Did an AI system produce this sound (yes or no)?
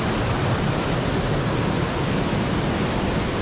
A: no